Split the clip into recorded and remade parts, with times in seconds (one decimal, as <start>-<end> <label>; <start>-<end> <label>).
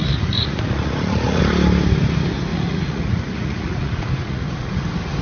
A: 0.0-1.4 remade; 1.4-2.5 recorded; 2.5-4.8 remade; 4.8-5.2 recorded